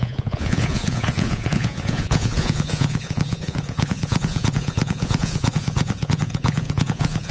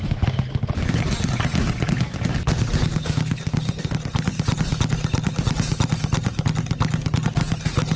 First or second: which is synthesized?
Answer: first